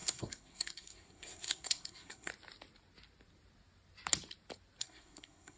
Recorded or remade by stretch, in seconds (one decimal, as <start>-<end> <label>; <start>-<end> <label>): 0.0-2.3 remade; 2.3-4.8 recorded; 4.8-5.6 remade